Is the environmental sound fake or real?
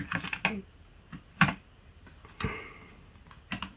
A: real